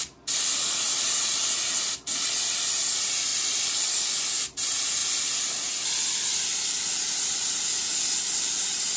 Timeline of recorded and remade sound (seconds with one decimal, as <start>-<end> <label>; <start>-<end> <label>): 0.0-9.0 recorded